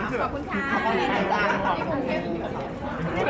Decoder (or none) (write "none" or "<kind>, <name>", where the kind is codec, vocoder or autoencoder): none